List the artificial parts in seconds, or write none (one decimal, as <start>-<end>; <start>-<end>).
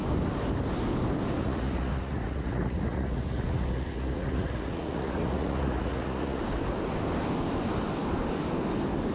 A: 1.4-6.4